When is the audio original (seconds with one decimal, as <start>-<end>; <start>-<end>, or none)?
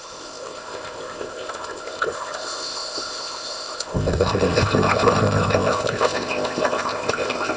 none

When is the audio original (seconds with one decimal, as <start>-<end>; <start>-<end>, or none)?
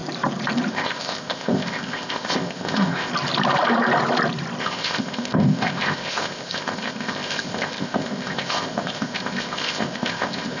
0.0-0.7; 3.1-4.6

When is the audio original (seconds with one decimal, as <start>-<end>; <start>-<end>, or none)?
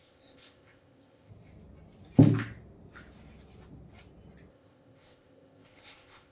1.3-4.5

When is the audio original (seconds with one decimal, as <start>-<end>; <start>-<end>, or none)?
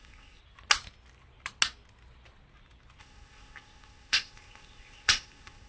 0.4-3.0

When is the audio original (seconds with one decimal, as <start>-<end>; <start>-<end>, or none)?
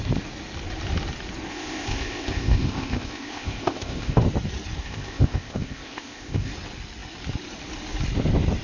0.0-1.5; 4.2-4.8; 6.5-8.6